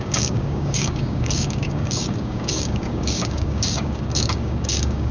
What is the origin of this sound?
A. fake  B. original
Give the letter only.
A